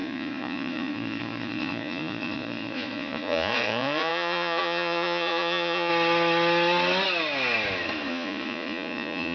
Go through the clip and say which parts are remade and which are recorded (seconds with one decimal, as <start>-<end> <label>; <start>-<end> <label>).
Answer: 0.0-5.9 remade; 5.9-8.1 recorded; 8.1-9.3 remade